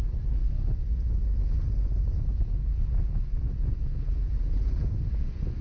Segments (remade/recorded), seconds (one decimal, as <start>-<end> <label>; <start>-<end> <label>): 0.0-5.6 remade